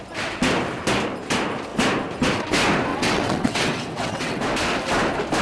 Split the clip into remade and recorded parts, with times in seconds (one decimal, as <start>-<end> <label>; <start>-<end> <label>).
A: 0.0-2.9 recorded; 2.9-4.4 remade; 4.4-5.4 recorded